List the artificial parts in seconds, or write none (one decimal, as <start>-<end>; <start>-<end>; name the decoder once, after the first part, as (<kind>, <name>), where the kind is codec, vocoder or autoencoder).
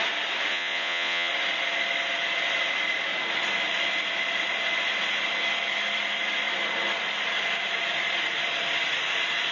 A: 0.5-1.3 (vocoder, Vocos)